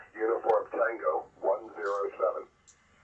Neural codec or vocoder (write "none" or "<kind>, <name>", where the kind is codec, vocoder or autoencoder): none